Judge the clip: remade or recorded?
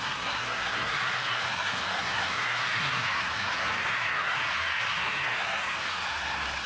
remade